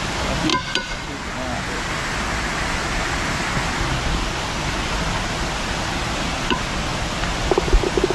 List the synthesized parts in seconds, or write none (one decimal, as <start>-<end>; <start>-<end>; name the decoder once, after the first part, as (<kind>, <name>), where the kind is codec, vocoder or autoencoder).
none